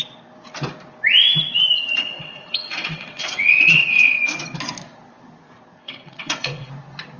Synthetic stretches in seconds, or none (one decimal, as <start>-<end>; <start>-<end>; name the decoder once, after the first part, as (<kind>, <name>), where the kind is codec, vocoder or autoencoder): 2.0-4.2 (vocoder, WaveNeXt); 5.8-6.7